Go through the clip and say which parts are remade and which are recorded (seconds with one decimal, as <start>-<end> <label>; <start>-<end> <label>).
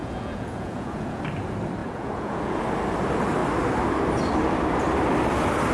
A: 0.0-1.2 remade; 1.2-1.8 recorded; 1.8-2.6 remade; 2.6-5.7 recorded